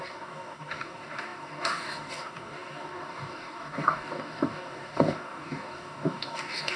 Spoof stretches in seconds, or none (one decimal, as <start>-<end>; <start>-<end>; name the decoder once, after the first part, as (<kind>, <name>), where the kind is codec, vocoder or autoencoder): 0.0-6.8 (codec, DAC)